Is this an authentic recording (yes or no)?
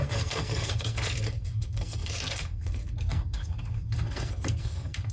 no